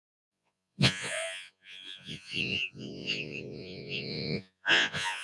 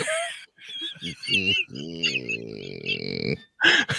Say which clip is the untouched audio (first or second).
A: second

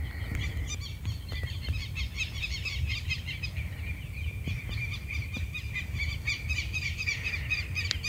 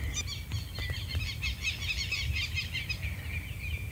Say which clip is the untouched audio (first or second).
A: second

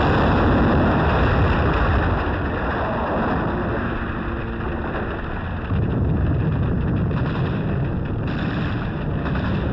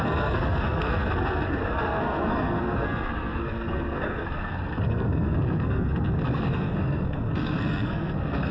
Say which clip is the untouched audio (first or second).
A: first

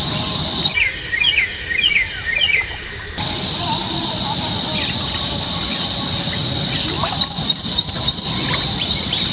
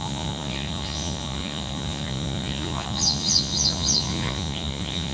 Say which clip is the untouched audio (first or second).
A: first